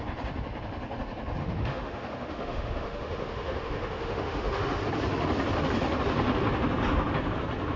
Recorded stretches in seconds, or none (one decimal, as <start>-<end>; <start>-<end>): 0.0-1.4; 4.8-7.8